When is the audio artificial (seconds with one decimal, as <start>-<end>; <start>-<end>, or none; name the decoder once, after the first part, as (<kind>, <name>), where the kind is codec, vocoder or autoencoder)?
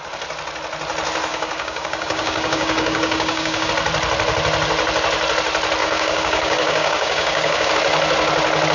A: 1.3-3.7 (codec, DAC); 5.8-7.7